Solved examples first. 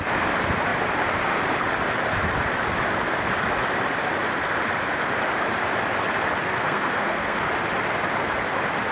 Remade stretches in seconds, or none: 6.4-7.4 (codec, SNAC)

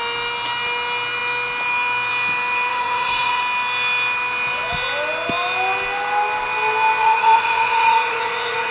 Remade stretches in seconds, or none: 2.7-3.4 (vocoder, Vocos); 7.0-8.7

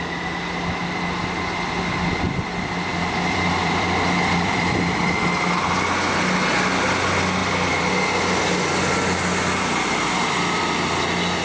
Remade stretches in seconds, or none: 2.9-5.2 (vocoder, BigVGAN v2); 7.4-7.9

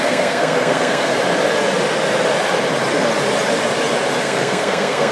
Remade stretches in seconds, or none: 0.0-1.1 (codec, SNAC); 4.2-5.1